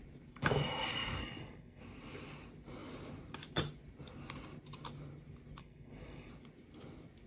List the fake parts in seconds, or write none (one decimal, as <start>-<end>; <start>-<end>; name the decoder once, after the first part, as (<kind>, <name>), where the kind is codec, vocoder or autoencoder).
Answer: 1.2-1.8 (codec, SNAC); 5.6-6.3